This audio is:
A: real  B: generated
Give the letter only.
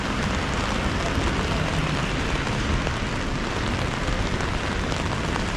A